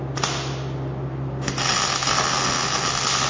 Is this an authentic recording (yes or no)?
yes